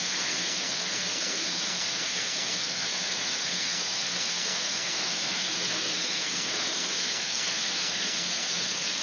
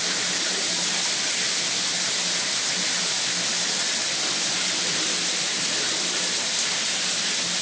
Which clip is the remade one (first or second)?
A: first